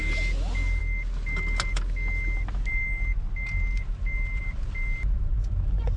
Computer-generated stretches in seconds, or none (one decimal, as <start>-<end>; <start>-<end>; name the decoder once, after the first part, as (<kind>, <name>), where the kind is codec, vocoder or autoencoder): none

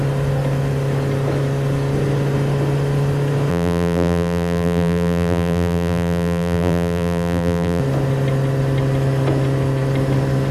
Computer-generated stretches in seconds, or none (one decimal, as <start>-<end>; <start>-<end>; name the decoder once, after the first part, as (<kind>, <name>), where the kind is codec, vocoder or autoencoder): 3.5-7.8 (vocoder, BigVGAN v2)

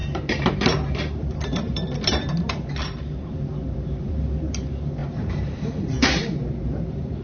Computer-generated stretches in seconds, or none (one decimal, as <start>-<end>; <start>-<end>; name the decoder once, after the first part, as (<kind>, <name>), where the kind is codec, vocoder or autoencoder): 0.0-4.3 (vocoder, BigVGAN v2); 5.0-7.2

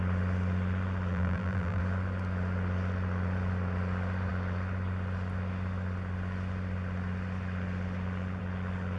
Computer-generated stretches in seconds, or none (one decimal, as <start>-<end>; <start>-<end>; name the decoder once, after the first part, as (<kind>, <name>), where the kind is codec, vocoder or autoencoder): 1.1-1.8 (vocoder, BigVGAN v2)

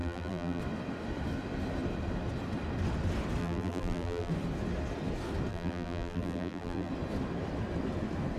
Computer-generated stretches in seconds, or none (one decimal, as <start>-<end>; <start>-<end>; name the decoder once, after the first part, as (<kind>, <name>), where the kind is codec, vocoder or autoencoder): 0.0-0.6 (vocoder, BigVGAN v2); 3.4-4.3; 5.5-6.9